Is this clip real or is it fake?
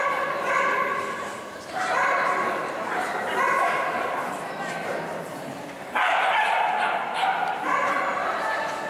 fake